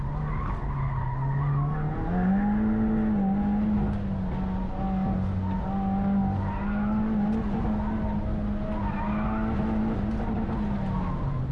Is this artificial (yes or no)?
no